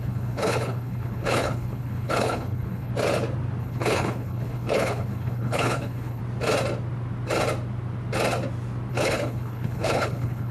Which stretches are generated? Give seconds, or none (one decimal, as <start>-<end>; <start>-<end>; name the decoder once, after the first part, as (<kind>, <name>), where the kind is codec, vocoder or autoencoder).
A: 0.0-2.9 (codec, HILCodec); 3.6-6.2; 8.9-10.5